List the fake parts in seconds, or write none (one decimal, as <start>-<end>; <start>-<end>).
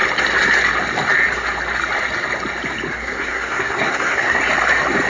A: 2.9-4.4